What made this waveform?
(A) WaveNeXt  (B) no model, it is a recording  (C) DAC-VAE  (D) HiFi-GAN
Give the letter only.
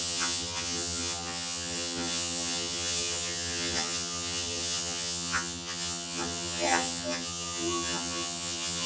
D